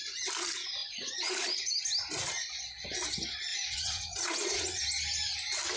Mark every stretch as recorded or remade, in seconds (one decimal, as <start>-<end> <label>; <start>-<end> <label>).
0.0-0.8 recorded; 0.8-1.8 remade; 1.8-3.5 recorded; 3.5-4.8 remade; 4.8-5.8 recorded